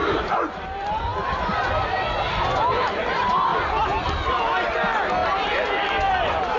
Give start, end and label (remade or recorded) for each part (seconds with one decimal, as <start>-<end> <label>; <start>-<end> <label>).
0.0-3.5 recorded; 3.5-4.4 remade; 4.4-5.2 recorded; 5.2-6.1 remade; 6.1-6.6 recorded